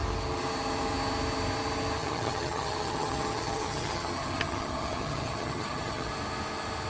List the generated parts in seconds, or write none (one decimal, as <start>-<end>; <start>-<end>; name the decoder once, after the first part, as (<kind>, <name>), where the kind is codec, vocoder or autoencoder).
2.0-6.1 (vocoder, HiFi-GAN)